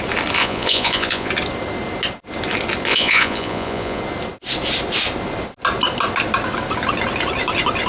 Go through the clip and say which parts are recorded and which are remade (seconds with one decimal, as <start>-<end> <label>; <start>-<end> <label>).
0.0-0.4 recorded; 0.4-1.3 remade; 1.3-2.9 recorded; 2.9-4.0 remade; 4.0-7.9 recorded